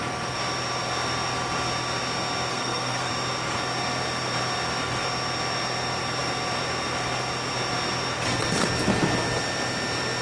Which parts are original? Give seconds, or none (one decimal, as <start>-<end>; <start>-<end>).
0.0-2.5; 3.1-10.2